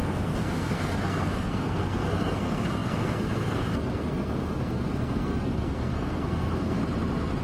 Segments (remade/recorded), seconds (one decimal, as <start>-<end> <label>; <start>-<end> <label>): 0.0-6.8 remade; 6.8-7.4 recorded